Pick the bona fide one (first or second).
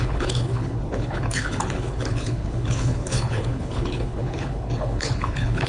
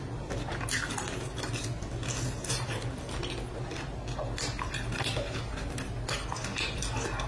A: second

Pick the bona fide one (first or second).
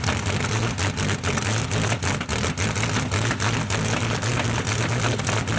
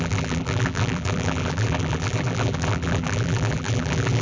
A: first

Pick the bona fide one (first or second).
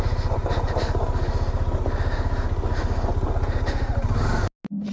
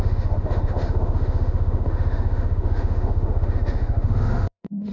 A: first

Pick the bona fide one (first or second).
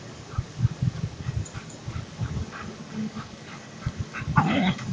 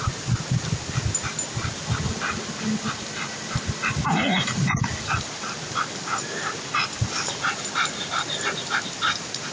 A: second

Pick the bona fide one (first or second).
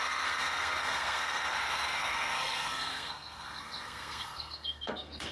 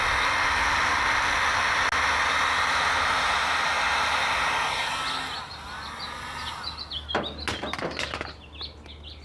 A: second